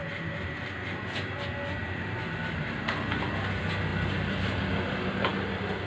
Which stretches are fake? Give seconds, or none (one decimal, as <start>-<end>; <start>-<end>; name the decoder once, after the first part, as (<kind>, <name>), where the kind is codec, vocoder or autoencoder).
0.0-1.3 (vocoder, BigVGAN v2); 1.8-2.3